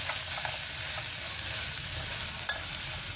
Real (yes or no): yes